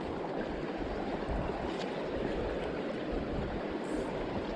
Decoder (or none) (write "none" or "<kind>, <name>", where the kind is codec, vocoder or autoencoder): none